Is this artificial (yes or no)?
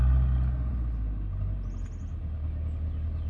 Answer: no